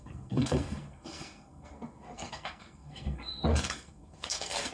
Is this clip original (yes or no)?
no